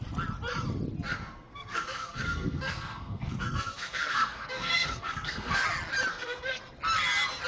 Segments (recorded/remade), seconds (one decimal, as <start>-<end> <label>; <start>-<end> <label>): 0.0-1.1 recorded; 1.1-5.6 remade; 5.6-6.1 recorded; 6.1-6.6 remade; 6.6-7.5 recorded